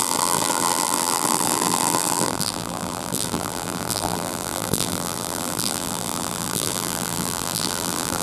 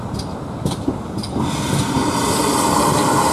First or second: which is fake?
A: first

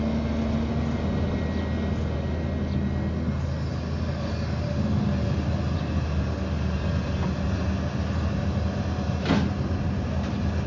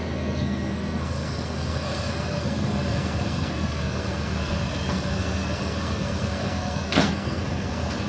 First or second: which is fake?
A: second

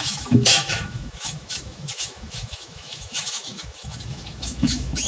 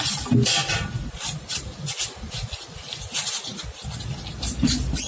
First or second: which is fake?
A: first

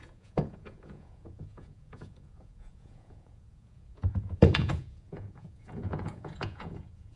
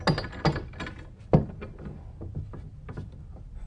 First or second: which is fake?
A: first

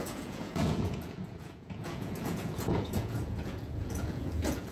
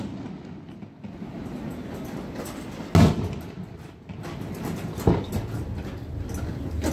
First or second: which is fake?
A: first